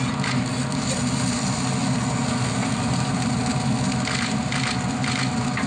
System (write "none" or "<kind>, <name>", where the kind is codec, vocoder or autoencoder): none